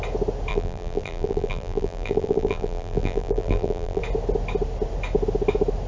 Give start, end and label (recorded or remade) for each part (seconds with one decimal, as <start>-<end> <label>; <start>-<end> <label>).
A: 0.0-0.5 recorded; 0.5-4.0 remade; 4.0-5.9 recorded